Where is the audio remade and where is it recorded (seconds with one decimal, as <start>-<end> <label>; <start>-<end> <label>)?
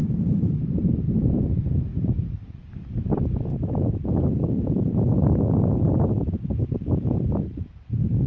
0.0-1.3 remade; 1.3-1.9 recorded; 1.9-2.7 remade; 2.7-3.5 recorded; 3.5-8.3 remade